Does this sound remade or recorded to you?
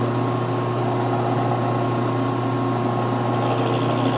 recorded